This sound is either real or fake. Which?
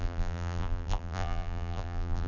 fake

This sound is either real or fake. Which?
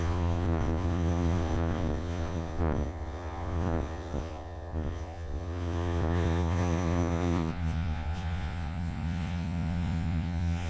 fake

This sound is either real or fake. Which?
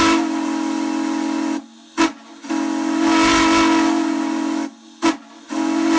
real